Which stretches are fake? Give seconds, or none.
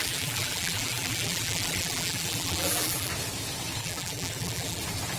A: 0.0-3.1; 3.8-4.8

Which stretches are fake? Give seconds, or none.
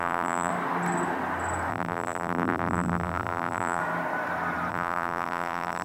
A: 0.0-0.5; 1.7-3.8; 4.7-5.8